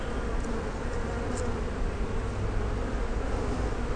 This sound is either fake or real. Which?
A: real